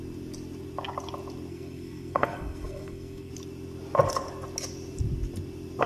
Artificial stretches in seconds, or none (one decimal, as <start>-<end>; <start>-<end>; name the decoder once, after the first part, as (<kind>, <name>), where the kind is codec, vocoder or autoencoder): 1.5-3.3 (codec, SNAC)